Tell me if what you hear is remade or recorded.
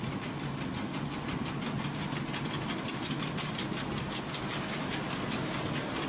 recorded